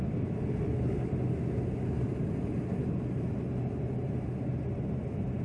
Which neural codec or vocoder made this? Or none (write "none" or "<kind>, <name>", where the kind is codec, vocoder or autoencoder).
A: none